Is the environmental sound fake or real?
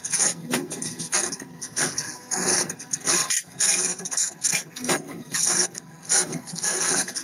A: fake